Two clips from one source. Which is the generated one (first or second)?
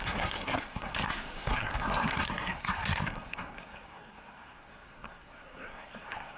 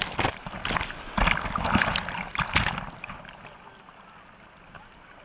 first